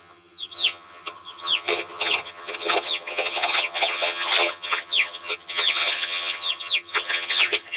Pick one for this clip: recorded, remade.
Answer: remade